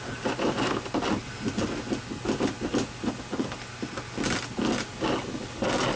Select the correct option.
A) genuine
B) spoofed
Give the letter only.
A